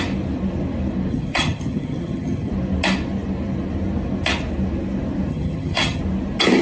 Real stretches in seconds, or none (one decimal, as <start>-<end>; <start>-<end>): 0.0-1.1; 2.5-5.3; 6.0-6.6